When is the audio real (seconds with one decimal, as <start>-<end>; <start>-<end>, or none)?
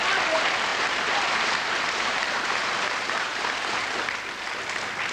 0.0-0.7; 3.8-5.1